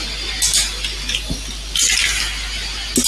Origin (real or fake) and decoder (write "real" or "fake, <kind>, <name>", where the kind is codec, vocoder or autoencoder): real